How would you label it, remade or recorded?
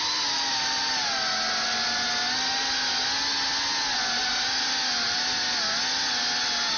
recorded